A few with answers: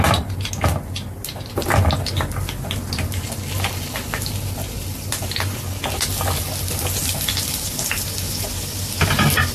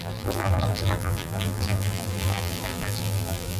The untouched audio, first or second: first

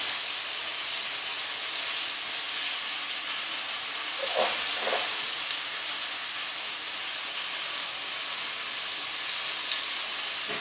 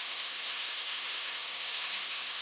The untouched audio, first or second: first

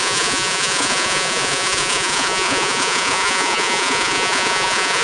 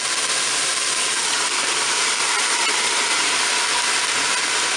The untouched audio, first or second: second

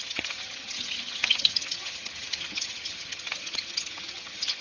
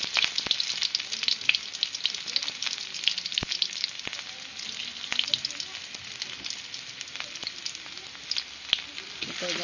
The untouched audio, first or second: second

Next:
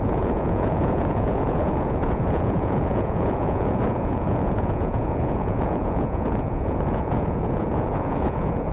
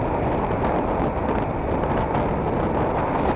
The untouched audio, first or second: second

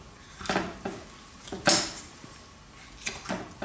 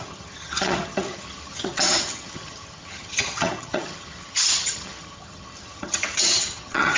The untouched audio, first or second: first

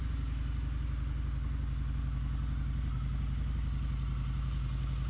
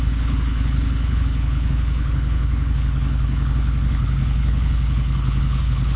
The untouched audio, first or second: first